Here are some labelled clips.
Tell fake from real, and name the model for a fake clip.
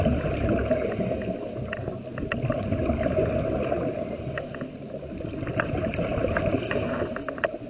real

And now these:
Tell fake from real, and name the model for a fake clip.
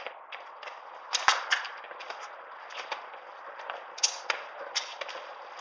real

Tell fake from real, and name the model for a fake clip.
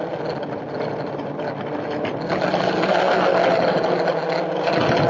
real